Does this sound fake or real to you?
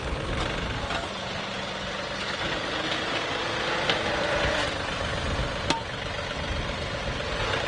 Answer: real